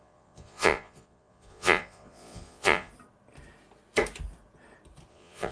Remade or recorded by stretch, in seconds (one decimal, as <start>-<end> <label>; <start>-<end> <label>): 0.0-2.9 remade; 2.9-5.1 recorded; 5.1-5.5 remade